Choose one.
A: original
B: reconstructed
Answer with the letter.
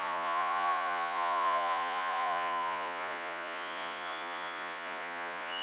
B